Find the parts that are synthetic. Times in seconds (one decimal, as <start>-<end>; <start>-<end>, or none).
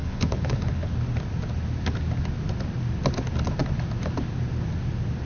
0.0-0.9